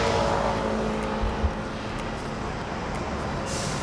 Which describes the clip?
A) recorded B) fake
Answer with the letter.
A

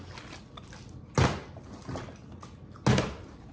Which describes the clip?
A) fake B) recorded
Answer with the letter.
B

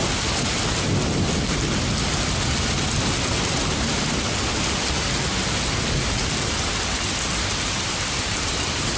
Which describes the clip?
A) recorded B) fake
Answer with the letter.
A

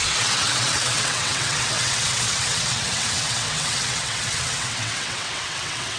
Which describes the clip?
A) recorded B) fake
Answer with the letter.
B